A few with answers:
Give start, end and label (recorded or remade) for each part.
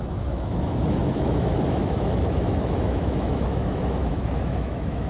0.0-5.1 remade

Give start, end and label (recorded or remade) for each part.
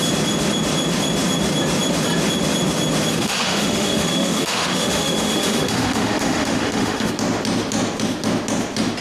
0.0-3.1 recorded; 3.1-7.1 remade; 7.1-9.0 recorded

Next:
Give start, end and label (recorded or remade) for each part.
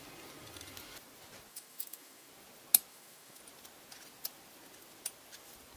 0.0-1.5 recorded; 1.5-2.3 remade; 2.3-2.9 recorded; 2.9-3.4 remade; 3.4-5.8 recorded